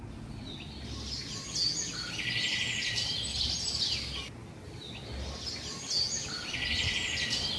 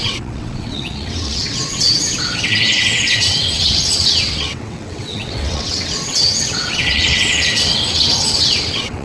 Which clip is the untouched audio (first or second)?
first